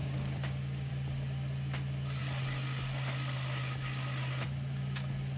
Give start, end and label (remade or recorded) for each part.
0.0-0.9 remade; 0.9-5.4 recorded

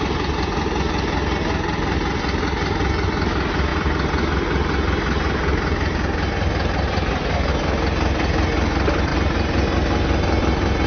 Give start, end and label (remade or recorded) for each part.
0.0-10.9 recorded

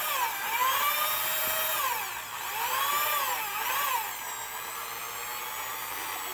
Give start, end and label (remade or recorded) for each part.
0.0-6.3 recorded

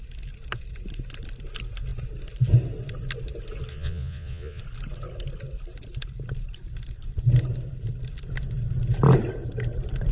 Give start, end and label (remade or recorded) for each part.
0.0-3.7 recorded; 3.7-4.6 remade; 4.6-10.1 recorded

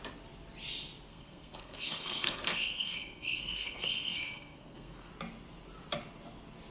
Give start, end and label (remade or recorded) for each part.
0.0-1.1 recorded; 1.1-5.1 remade; 5.1-6.7 recorded